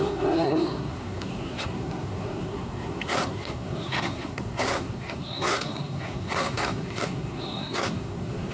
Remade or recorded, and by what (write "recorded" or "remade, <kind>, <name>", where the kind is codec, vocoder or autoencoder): remade, codec, SNAC